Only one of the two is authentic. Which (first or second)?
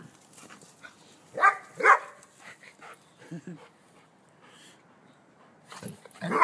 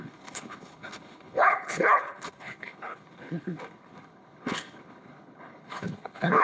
first